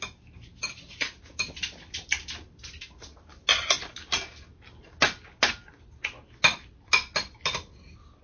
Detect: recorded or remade recorded